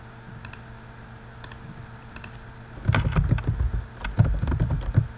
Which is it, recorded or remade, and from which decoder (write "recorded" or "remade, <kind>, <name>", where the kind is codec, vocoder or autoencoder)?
recorded